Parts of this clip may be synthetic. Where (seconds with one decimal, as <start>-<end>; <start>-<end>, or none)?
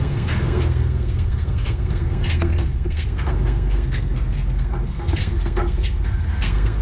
0.0-6.8